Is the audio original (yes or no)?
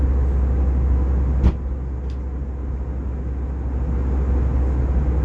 yes